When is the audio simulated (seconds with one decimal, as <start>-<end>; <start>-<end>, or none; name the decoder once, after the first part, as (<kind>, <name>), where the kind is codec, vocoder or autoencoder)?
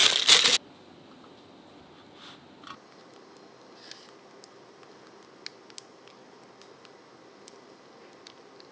none